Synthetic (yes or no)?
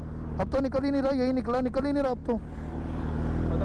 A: no